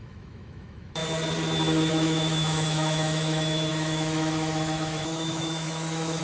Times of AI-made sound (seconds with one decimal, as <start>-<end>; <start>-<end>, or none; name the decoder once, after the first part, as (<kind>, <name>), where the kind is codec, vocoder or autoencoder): 0.0-1.0 (autoencoder, DAC-VAE); 1.9-6.2

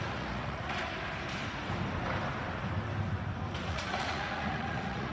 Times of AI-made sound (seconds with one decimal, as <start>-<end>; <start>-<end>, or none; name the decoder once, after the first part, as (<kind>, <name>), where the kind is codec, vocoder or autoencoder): 0.0-0.8 (vocoder, Vocos); 3.7-5.1

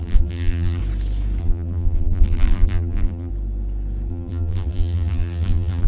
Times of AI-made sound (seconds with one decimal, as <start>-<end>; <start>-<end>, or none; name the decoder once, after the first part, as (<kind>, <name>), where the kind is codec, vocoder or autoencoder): 0.0-0.8 (vocoder, BigVGAN v2); 1.4-3.3; 4.1-5.9

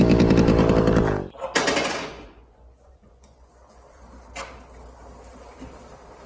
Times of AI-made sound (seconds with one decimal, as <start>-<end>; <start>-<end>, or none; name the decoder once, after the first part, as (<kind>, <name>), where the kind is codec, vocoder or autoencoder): 1.8-4.1 (vocoder, Vocos)

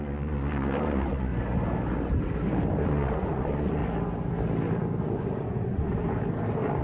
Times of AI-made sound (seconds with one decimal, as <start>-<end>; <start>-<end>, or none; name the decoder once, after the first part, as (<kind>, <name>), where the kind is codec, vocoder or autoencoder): 0.0-1.3 (vocoder, Vocos); 2.8-3.8; 5.0-5.9

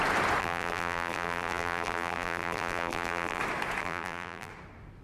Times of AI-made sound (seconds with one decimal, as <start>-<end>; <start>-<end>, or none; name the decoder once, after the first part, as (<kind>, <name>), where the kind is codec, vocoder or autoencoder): 0.4-3.4 (vocoder, BigVGAN v2); 3.8-4.5

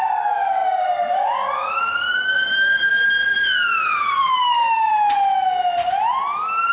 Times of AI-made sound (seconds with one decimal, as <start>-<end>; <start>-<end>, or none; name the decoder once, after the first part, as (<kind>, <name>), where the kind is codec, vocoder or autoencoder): 0.0-2.9 (codec, DAC); 3.4-4.9

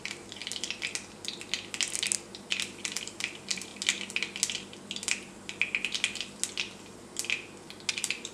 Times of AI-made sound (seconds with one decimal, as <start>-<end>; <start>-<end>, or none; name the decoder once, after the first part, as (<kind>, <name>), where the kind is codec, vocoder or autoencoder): 0.0-0.4 (vocoder, BigVGAN v2); 3.0-3.7; 7.9-8.3